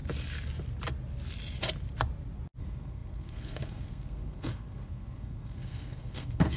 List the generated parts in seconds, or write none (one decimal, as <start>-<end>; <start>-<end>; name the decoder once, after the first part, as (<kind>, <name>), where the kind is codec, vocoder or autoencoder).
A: 2.6-6.6 (codec, SNAC)